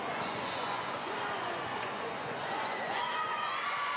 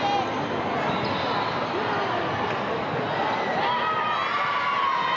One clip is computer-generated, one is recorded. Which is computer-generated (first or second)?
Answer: first